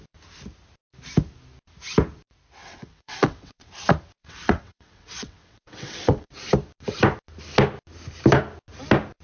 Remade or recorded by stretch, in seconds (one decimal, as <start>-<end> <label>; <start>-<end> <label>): 0.0-2.6 recorded; 2.6-3.7 remade; 3.7-4.2 recorded; 4.2-6.3 remade; 6.3-9.2 recorded